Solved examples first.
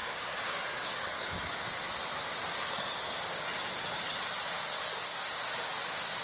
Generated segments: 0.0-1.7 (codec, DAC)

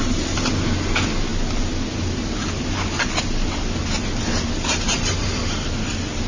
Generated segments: none

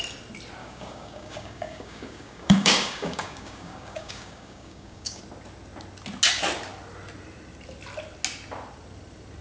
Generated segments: 0.6-5.2 (codec, DAC)

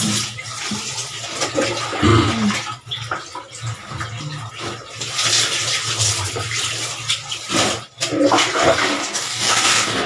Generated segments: 9.0-10.1 (codec, DAC)